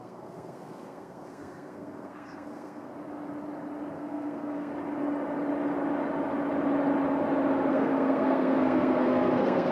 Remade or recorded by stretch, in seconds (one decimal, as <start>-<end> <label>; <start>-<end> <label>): 0.0-2.9 remade; 2.9-3.9 recorded; 3.9-4.7 remade; 4.7-7.7 recorded; 7.7-9.7 remade